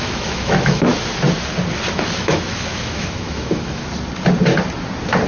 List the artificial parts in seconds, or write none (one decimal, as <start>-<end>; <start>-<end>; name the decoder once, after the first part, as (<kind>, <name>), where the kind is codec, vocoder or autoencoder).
0.0-0.9 (autoencoder, DAC-VAE); 1.9-3.9